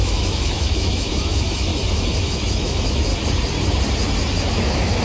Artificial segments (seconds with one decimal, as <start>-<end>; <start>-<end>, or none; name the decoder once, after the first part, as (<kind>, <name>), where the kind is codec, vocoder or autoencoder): 0.0-1.7 (autoencoder, DAC-VAE); 2.2-3.1; 4.5-5.0